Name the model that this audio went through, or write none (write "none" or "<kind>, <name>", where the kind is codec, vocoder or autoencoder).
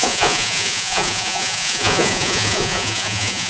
vocoder, Vocos